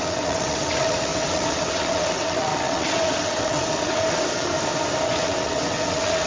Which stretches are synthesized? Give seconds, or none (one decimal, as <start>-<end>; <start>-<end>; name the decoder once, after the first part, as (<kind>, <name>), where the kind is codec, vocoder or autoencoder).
0.0-4.5 (vocoder, WaveNeXt); 5.0-6.3